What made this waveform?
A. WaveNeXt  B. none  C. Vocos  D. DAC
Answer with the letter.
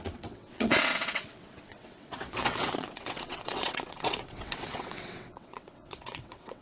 A